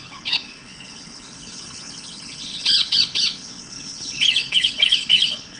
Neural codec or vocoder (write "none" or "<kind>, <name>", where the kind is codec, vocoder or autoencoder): codec, HILCodec